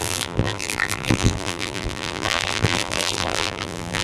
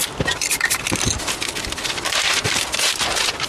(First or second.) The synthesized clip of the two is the first